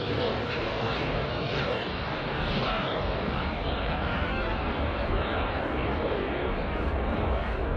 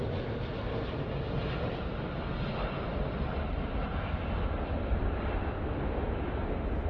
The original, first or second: second